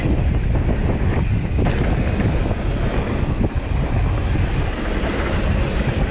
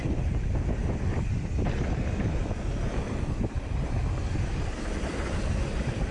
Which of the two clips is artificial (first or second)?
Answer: second